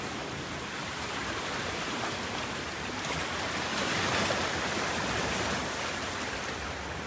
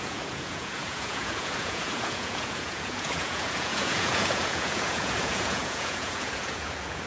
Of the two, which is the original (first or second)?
first